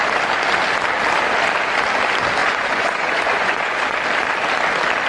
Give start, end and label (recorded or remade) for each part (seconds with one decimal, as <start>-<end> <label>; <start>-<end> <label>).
0.0-2.4 recorded; 2.4-4.0 remade; 4.0-5.1 recorded